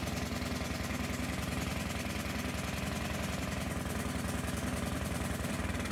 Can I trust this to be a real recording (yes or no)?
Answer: yes